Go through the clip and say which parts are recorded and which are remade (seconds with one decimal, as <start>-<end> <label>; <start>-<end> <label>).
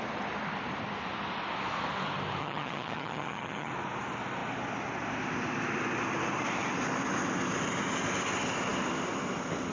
0.0-2.4 recorded; 2.4-3.7 remade; 3.7-9.7 recorded